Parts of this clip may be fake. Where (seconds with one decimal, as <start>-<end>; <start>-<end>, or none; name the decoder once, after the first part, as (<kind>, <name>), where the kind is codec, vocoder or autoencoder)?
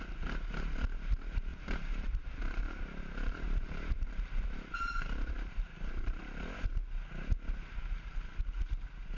1.5-6.2 (vocoder, BigVGAN v2)